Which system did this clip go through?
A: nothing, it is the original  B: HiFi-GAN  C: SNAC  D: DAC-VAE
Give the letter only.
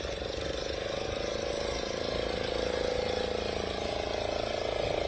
A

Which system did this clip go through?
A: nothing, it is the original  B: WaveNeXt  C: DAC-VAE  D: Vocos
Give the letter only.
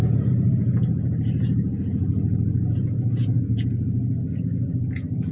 D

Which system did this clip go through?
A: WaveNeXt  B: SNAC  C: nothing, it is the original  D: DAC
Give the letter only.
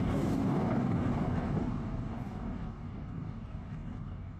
D